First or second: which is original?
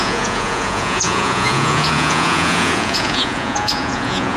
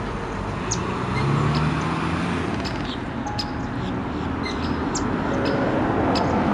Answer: second